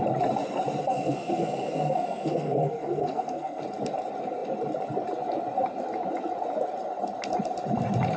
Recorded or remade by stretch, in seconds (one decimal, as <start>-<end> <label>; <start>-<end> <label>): 0.0-0.8 recorded; 0.8-3.6 remade; 3.6-8.2 recorded